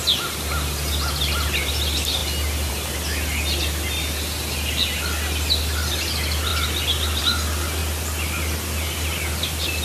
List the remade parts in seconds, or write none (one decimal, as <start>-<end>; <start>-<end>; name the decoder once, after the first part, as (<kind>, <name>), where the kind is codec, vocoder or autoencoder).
none